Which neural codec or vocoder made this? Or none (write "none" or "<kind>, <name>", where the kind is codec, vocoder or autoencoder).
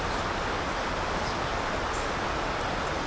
none